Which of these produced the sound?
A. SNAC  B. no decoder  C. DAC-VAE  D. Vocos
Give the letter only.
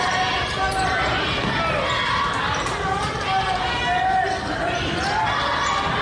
B